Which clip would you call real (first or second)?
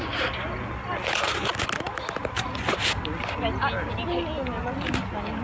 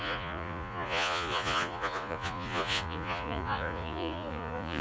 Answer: first